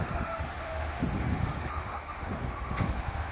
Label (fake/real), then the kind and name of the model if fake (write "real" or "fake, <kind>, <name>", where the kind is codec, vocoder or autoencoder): fake, autoencoder, DAC-VAE